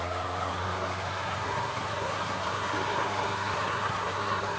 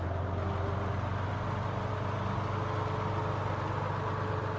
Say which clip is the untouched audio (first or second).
second